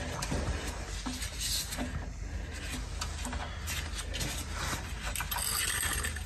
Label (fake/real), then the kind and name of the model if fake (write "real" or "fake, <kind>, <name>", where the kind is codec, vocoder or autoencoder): real